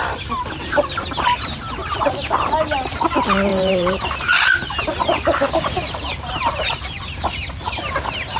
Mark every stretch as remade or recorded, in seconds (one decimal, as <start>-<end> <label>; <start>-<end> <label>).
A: 0.0-3.5 recorded; 3.5-6.8 remade; 6.8-8.4 recorded